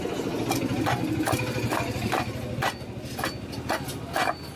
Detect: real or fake real